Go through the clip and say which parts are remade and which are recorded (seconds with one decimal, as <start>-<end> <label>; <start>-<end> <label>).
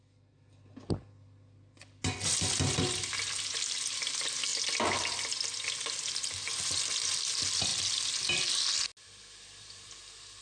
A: 0.0-10.4 recorded